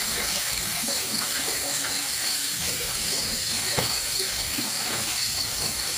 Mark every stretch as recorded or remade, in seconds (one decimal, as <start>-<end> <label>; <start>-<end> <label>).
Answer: 0.0-6.0 remade